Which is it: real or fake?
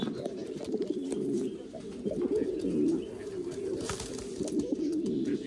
real